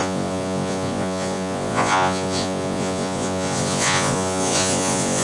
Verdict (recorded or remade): remade